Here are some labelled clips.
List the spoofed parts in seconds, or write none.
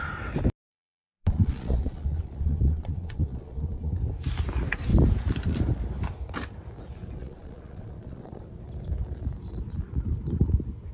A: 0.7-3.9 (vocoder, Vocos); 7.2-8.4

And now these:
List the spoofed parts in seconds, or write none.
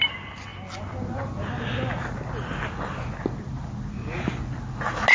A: none